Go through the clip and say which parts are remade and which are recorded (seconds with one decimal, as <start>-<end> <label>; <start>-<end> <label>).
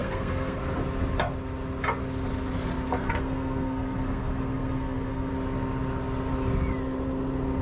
0.0-0.6 remade; 0.6-3.0 recorded; 3.0-5.3 remade; 5.3-7.6 recorded